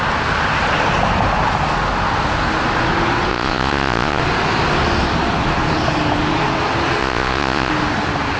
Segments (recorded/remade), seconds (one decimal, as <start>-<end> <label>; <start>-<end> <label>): 0.0-3.3 recorded; 3.3-4.2 remade; 4.2-7.0 recorded; 7.0-7.7 remade; 7.7-8.4 recorded